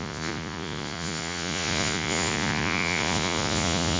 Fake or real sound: fake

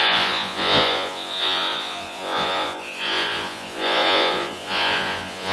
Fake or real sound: fake